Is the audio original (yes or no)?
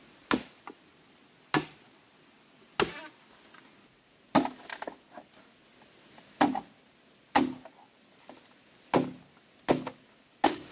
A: yes